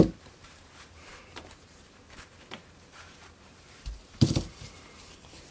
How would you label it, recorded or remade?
remade